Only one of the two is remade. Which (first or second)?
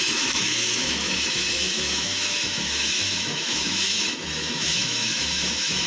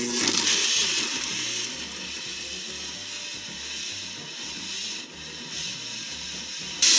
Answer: first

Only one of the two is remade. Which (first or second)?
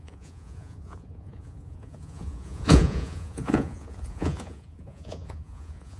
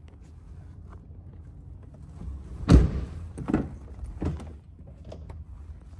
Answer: first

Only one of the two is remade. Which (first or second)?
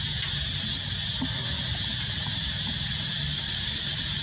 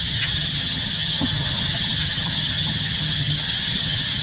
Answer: second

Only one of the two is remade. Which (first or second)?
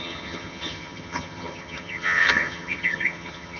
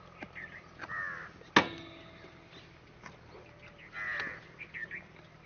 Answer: first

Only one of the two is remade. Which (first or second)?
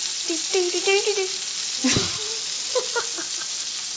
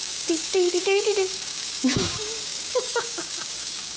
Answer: second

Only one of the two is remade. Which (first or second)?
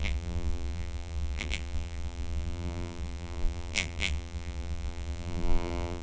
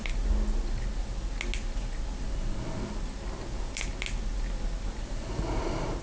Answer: first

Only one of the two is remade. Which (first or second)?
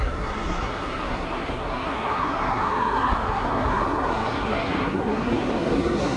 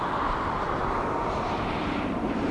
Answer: first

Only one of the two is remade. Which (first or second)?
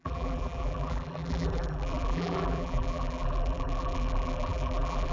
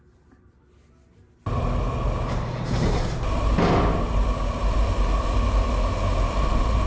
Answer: first